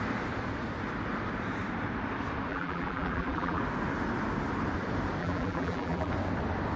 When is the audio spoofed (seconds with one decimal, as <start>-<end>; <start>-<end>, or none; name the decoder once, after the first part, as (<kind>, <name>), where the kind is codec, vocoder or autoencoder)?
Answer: 2.5-3.6 (vocoder, BigVGAN v2); 5.2-6.1